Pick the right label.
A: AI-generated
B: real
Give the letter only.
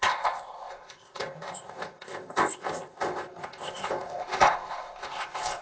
A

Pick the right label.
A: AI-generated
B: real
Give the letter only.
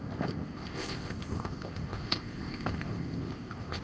A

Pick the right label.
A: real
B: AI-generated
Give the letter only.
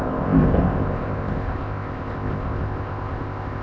B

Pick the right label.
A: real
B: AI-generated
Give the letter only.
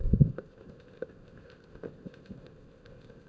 B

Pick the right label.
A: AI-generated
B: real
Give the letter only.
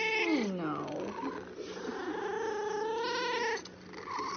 B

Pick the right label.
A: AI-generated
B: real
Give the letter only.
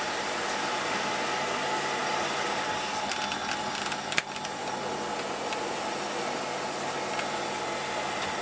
B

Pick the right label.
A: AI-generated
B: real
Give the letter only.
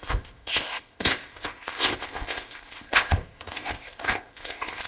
A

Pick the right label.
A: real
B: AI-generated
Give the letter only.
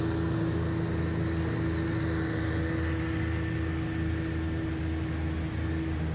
A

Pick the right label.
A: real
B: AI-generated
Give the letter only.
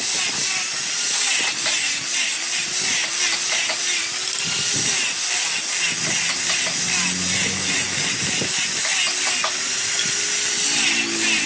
A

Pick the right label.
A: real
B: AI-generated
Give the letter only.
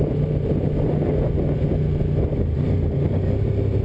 A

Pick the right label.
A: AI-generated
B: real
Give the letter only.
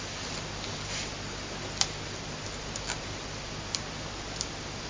B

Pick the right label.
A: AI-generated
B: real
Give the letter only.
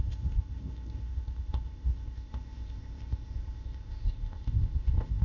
A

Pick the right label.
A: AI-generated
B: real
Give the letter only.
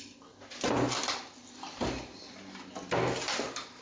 B